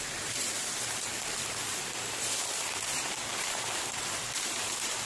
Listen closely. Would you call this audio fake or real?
fake